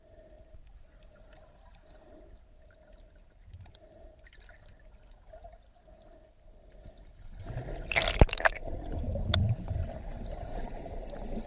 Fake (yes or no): no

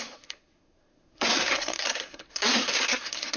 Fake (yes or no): yes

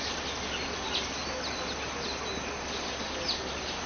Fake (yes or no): no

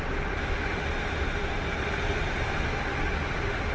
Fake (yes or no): no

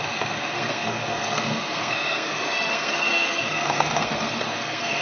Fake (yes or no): yes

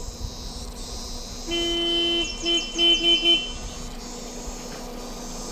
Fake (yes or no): no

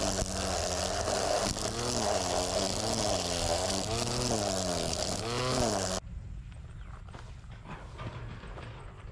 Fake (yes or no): no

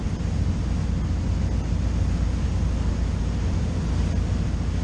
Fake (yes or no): no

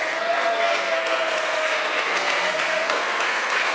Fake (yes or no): yes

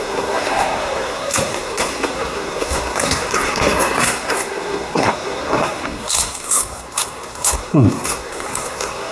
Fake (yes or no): yes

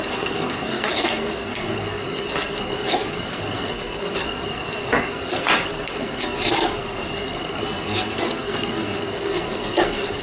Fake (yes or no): yes